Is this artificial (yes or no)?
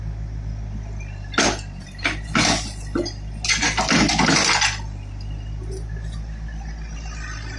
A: no